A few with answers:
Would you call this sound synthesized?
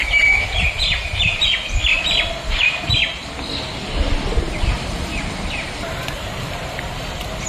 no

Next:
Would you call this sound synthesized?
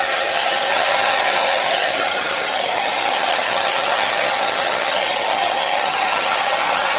yes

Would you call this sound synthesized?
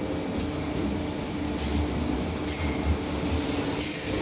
no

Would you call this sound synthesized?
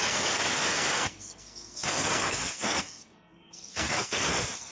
yes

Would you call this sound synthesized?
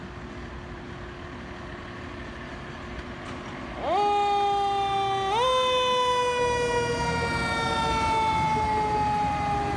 no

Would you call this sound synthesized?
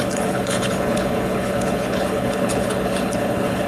yes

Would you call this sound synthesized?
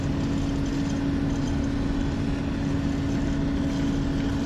no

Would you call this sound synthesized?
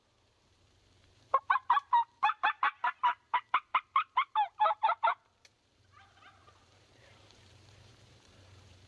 yes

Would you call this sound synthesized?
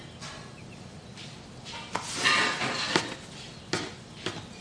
no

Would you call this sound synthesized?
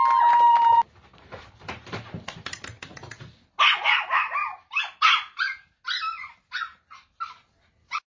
no